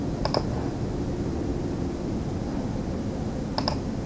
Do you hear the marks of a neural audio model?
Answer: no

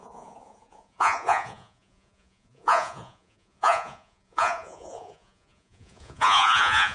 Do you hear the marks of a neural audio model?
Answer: yes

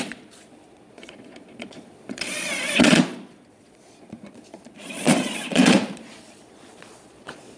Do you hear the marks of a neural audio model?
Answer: yes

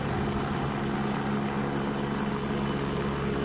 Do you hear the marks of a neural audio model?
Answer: no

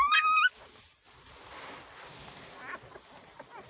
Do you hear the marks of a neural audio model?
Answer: no